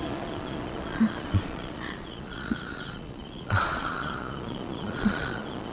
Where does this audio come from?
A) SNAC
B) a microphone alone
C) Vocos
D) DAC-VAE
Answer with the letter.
C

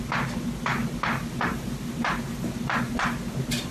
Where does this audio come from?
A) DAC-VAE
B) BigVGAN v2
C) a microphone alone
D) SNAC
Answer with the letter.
C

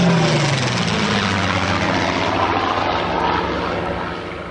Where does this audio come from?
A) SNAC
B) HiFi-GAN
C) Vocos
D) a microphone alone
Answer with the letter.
D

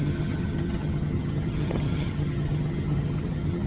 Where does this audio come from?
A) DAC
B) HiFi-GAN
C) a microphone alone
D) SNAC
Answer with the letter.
B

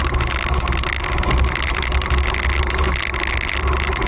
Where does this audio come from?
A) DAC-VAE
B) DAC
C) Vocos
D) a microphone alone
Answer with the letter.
D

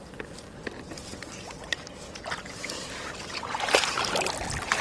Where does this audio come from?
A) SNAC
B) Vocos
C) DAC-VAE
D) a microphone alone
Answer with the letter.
D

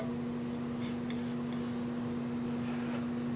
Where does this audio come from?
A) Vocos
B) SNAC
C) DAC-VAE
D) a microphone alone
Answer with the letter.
D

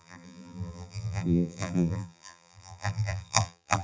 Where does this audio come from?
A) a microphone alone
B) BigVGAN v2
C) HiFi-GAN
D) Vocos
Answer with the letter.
B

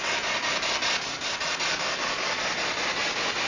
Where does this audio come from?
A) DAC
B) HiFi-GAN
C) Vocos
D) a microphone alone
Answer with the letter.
D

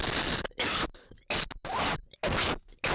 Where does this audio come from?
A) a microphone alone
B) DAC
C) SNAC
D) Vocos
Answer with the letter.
A